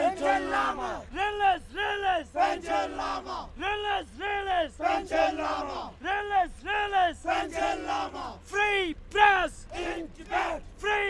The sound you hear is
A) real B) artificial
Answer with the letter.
A